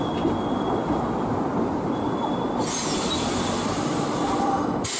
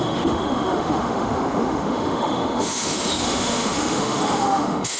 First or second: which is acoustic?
first